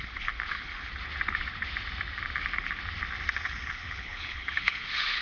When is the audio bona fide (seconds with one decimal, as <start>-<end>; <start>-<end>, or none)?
0.9-3.3